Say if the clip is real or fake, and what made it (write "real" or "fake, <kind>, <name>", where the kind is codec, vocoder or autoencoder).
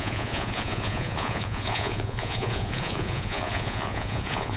fake, vocoder, Vocos